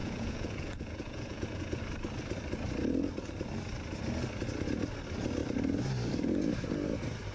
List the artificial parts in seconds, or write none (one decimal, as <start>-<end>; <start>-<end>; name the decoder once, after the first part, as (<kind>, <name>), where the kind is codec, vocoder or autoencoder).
0.0-1.8 (vocoder, Vocos)